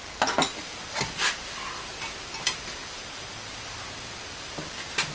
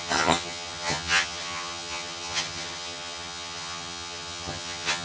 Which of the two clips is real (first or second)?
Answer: first